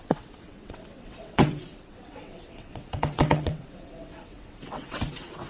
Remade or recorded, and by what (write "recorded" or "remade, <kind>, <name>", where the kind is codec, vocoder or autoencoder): remade, vocoder, WaveNeXt